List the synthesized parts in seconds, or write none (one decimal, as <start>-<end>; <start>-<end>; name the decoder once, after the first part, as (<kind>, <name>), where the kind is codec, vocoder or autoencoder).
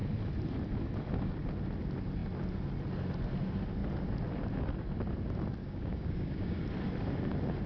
5.6-6.6 (codec, DAC)